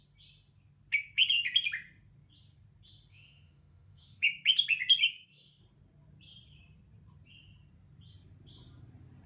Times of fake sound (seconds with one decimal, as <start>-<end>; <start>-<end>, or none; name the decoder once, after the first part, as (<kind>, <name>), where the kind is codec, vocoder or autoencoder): 3.1-4.3 (autoencoder, DAC-VAE); 5.1-5.6

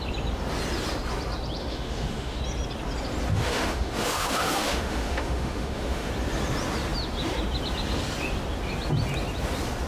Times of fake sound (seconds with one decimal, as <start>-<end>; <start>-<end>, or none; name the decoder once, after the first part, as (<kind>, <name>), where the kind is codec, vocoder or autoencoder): 1.6-2.4 (autoencoder, DAC-VAE); 3.3-6.1

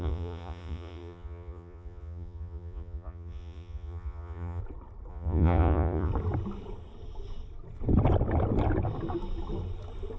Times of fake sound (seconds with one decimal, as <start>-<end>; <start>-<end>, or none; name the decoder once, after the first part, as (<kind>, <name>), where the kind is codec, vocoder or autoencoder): 0.0-4.6 (vocoder, Vocos); 5.1-6.1

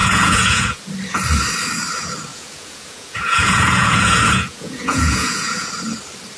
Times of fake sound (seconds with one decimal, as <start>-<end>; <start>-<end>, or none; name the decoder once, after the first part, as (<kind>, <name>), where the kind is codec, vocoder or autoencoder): 0.0-0.8 (vocoder, Vocos); 2.3-5.7

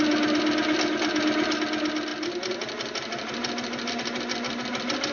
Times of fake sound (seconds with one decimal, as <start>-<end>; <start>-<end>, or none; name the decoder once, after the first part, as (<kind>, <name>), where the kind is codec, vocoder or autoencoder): none

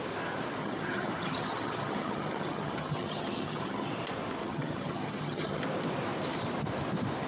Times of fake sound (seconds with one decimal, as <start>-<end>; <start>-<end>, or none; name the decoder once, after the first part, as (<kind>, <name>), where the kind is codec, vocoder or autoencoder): 0.6-3.9 (vocoder, HiFi-GAN); 4.4-5.6

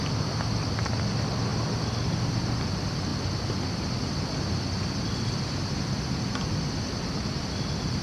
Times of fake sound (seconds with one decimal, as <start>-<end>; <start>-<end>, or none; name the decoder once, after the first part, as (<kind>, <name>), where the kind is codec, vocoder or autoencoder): none